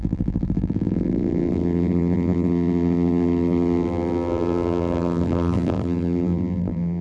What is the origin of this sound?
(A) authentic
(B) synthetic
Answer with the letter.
B